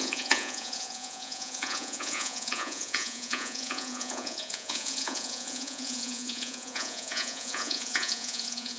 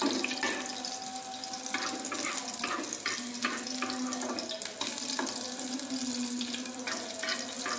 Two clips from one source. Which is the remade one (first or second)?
first